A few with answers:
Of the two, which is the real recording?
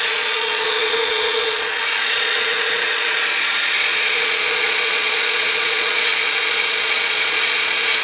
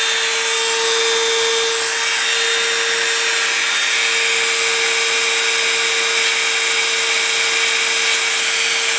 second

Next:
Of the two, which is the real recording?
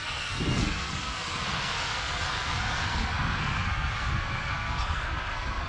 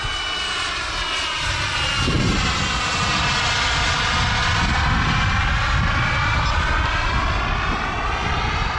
second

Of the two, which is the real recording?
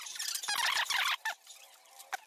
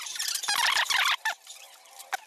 first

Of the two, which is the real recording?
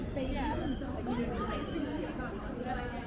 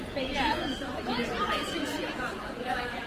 first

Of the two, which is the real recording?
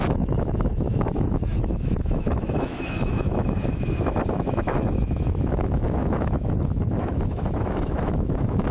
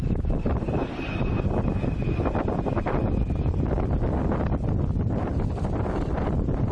second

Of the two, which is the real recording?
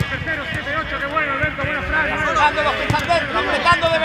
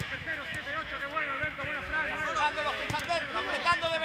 first